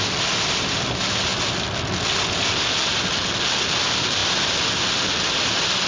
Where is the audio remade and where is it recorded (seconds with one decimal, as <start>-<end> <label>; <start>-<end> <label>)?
0.0-5.9 recorded